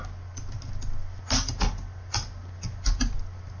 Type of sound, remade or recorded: recorded